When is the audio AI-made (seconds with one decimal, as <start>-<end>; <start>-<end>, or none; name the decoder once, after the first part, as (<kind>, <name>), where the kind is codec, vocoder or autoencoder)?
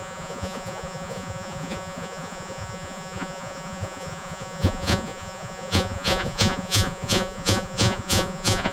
0.0-8.7 (vocoder, Vocos)